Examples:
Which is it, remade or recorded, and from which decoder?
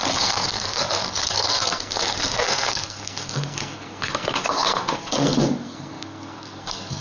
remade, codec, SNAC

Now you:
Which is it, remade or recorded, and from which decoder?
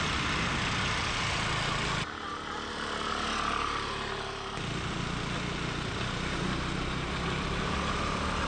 recorded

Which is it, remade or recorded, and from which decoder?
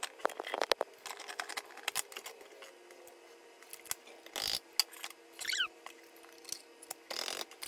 recorded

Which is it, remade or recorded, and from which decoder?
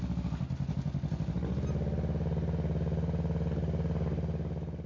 recorded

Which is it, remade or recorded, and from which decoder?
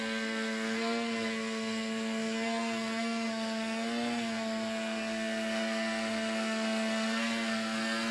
remade, codec, SNAC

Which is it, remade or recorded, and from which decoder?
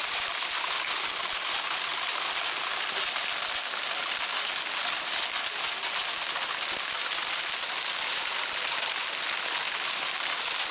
recorded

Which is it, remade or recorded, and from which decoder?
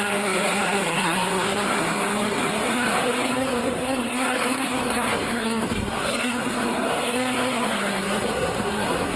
remade, codec, SNAC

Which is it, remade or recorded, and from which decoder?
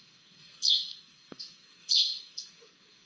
remade, codec, SNAC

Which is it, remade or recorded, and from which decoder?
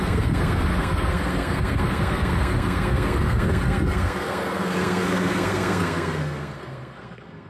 remade, codec, SNAC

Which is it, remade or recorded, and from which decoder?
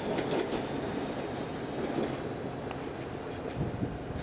recorded